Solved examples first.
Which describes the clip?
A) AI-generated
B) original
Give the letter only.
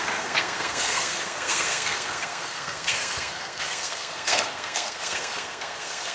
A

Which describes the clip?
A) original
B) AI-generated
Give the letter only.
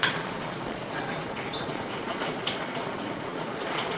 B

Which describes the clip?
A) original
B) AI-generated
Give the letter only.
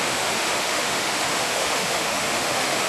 B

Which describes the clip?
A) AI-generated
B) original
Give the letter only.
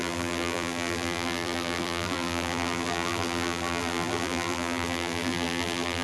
A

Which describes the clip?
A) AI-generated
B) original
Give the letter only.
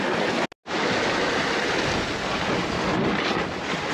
B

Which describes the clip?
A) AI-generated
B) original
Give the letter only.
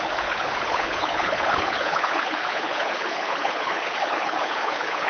A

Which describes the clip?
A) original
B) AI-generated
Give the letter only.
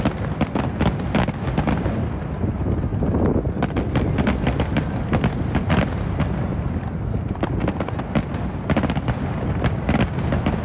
A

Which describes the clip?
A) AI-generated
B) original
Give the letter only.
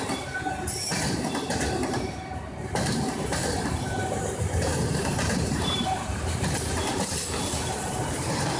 A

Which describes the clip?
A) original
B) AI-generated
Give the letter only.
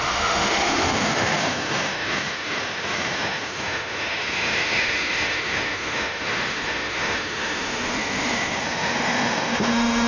B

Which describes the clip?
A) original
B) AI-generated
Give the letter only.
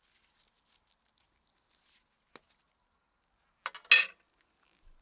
A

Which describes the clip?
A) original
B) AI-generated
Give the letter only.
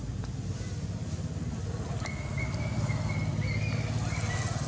A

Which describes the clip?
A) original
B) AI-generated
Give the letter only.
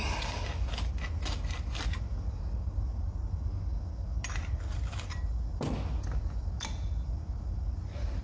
A